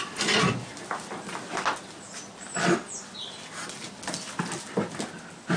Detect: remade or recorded recorded